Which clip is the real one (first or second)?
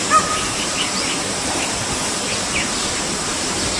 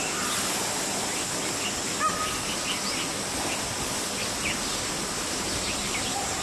second